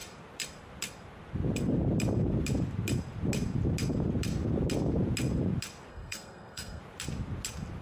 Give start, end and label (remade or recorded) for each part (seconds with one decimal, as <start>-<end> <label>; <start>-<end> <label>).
0.0-5.9 recorded; 5.9-6.8 remade; 6.8-7.8 recorded